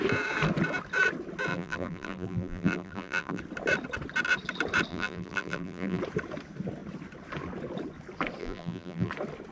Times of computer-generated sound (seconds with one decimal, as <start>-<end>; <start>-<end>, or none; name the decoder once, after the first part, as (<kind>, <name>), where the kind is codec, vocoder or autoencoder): 1.5-3.4 (vocoder, BigVGAN v2); 4.9-6.0; 8.4-9.1